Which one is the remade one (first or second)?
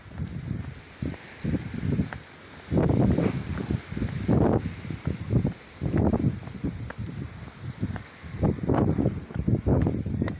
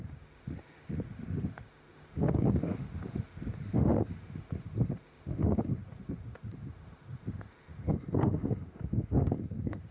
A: second